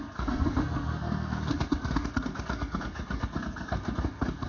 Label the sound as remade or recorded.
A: remade